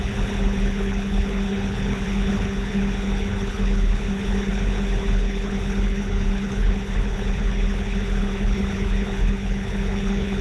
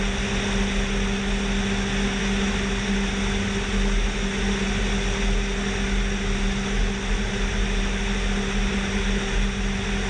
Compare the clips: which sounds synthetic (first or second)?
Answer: first